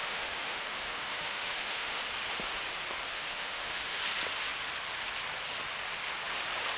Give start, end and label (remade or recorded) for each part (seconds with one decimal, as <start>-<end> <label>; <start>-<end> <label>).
0.0-2.0 remade; 2.0-3.1 recorded; 3.1-4.0 remade; 4.0-6.8 recorded